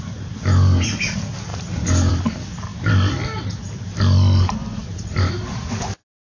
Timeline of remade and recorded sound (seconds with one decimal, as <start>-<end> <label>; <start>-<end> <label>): 0.0-6.2 recorded